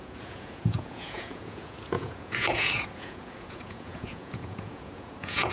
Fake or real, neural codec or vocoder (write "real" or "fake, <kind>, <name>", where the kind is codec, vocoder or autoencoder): fake, vocoder, Vocos